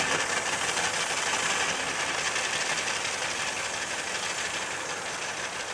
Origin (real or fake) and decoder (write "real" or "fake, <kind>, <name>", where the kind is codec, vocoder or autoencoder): real